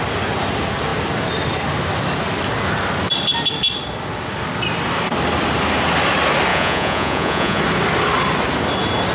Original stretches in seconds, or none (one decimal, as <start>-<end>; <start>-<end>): 0.0-6.5; 7.6-9.1